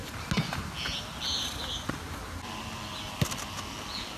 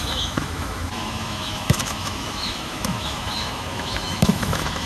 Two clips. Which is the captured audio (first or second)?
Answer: first